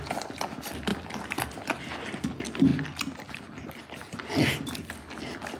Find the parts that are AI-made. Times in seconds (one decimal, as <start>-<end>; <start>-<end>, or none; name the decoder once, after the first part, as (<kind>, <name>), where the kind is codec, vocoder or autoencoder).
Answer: 0.9-1.4 (vocoder, BigVGAN v2)

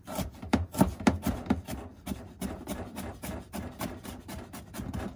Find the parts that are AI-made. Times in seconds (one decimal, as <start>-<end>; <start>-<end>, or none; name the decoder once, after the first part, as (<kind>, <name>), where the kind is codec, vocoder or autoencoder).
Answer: 1.9-4.0 (vocoder, BigVGAN v2)

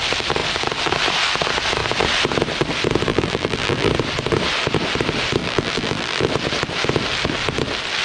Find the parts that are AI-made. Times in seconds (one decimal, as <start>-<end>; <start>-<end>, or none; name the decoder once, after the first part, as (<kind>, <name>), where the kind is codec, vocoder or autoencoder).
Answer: 3.1-3.9 (vocoder, BigVGAN v2); 5.4-6.3

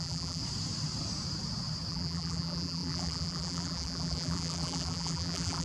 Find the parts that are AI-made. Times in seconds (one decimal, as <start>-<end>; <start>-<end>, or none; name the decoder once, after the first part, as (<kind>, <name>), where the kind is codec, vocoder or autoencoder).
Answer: 0.0-0.4 (vocoder, BigVGAN v2); 1.9-5.6